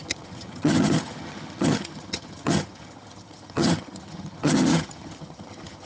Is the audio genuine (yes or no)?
no